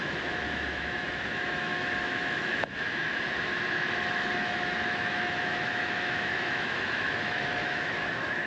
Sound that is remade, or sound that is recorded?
remade